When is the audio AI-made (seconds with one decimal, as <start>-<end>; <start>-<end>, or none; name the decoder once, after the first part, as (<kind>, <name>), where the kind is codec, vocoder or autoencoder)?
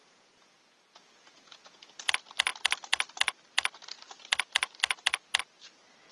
0.0-2.1 (vocoder, Vocos)